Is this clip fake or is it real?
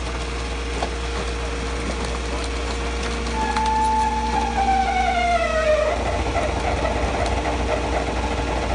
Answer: real